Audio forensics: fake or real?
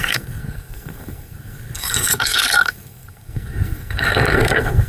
fake